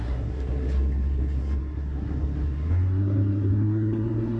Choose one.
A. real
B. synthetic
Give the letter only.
B